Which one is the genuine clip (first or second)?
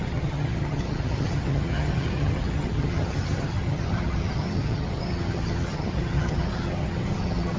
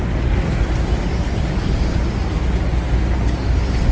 second